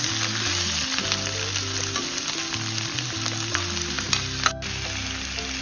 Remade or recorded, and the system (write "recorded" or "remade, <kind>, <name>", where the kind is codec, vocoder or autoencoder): recorded